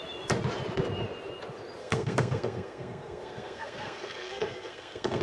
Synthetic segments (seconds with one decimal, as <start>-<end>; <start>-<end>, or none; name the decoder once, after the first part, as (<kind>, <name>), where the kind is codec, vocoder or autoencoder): 1.8-5.2 (codec, SNAC)